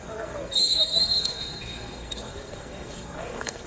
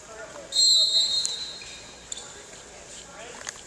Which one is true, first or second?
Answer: second